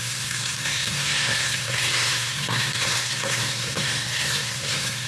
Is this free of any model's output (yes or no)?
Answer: no